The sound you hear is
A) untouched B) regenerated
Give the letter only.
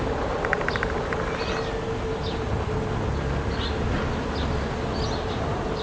A